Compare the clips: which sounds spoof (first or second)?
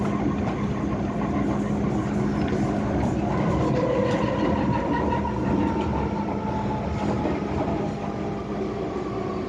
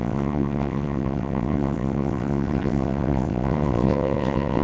second